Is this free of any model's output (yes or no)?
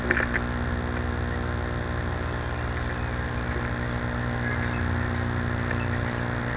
yes